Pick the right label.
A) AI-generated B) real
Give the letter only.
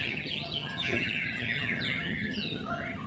A